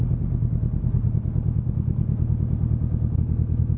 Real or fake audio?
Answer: real